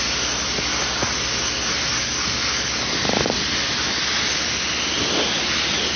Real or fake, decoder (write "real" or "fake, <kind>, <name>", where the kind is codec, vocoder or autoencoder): real